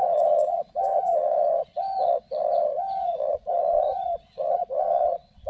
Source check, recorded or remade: remade